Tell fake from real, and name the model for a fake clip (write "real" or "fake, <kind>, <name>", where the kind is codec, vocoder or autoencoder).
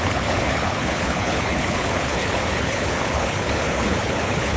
fake, codec, HILCodec